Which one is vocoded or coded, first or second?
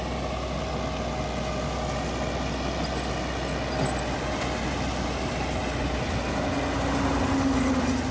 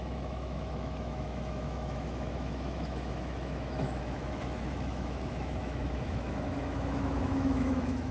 second